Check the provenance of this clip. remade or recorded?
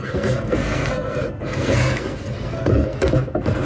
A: remade